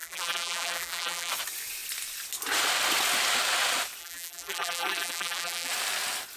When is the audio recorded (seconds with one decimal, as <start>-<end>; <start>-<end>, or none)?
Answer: 1.3-4.0; 5.7-6.4